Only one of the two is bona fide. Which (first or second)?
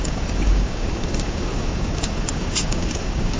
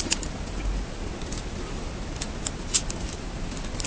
second